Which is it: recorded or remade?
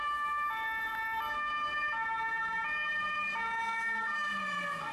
recorded